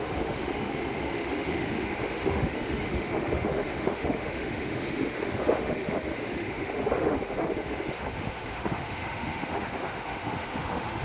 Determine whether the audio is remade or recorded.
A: remade